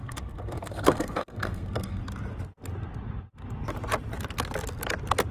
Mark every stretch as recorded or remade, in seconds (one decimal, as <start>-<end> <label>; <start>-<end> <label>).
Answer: 0.0-2.0 remade; 2.0-5.3 recorded